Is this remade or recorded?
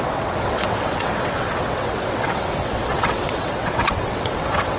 remade